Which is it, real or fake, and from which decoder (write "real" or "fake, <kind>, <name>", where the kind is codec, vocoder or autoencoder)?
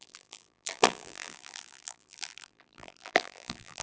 fake, vocoder, BigVGAN v2